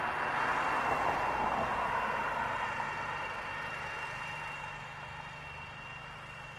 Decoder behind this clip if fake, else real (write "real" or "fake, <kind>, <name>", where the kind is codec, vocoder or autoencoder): real